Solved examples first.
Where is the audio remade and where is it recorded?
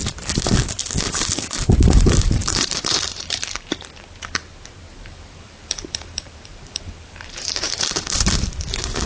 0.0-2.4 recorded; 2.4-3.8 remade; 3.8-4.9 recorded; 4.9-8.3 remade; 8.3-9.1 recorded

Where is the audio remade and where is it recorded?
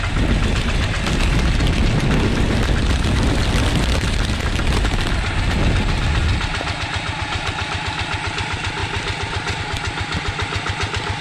0.0-11.2 recorded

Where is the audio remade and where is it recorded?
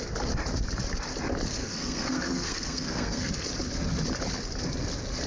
0.0-1.6 recorded; 1.6-3.3 remade; 3.3-5.3 recorded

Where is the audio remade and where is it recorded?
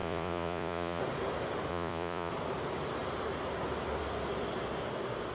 0.0-1.0 remade; 1.0-1.7 recorded; 1.7-2.3 remade; 2.3-5.3 recorded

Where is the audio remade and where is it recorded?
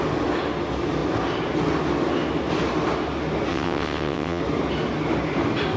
0.0-3.5 recorded; 3.5-4.4 remade; 4.4-5.8 recorded